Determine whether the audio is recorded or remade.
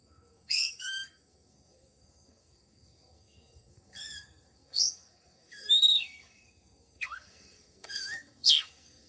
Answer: remade